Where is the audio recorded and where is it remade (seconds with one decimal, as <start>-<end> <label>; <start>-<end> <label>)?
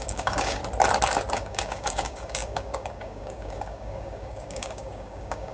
0.0-0.6 remade; 0.6-1.3 recorded; 1.3-5.5 remade